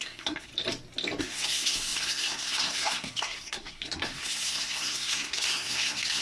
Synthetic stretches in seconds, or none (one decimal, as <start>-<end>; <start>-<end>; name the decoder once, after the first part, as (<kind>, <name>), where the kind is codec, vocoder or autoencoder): 0.0-0.5 (codec, SNAC); 1.2-6.2